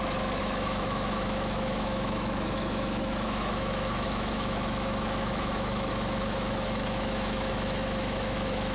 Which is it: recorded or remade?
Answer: remade